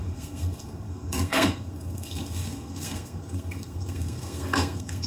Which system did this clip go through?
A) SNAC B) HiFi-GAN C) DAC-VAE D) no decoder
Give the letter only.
A